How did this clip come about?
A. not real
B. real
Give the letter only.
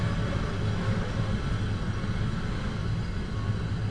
B